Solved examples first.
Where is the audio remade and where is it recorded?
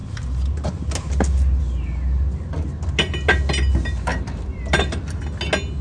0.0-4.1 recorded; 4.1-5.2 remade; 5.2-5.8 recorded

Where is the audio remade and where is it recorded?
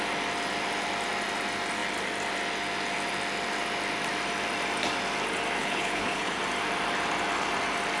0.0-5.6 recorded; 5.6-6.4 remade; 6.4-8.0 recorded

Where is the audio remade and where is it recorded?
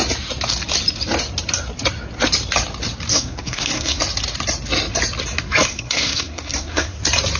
0.0-3.1 recorded; 3.1-4.0 remade; 4.0-5.7 recorded; 5.7-7.0 remade; 7.0-7.4 recorded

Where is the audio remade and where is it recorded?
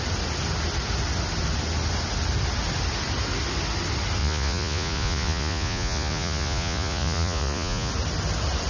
0.0-4.2 recorded; 4.2-7.9 remade; 7.9-8.7 recorded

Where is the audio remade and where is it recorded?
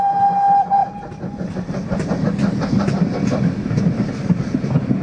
0.0-5.0 recorded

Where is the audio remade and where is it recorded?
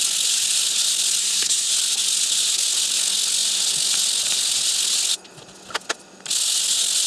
0.0-1.2 recorded; 1.2-1.7 remade; 1.7-7.1 recorded